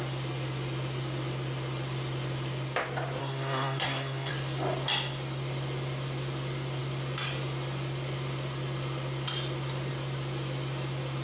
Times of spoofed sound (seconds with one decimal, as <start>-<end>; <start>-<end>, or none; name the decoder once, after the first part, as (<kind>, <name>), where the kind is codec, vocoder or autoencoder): 3.2-4.3 (codec, SNAC)